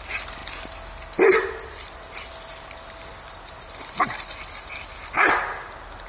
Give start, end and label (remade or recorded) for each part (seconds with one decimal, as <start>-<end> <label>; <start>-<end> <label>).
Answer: 0.0-6.1 remade